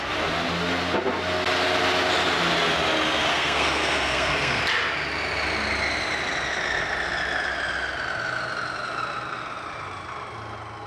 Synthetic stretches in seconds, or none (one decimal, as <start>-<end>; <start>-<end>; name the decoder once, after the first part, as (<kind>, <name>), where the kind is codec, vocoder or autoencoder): 3.3-4.6 (codec, SNAC)